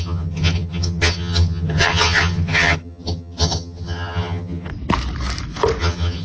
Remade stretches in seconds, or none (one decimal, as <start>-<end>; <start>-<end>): 0.0-4.7; 5.8-6.2